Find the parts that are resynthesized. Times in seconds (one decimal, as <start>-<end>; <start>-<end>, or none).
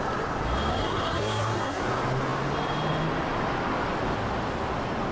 0.7-1.8